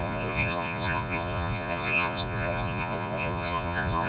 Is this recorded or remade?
remade